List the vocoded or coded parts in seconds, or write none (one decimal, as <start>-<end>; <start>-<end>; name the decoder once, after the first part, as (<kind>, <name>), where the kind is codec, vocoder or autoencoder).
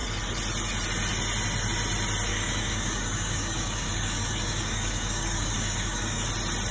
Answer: 2.3-6.3 (codec, DAC)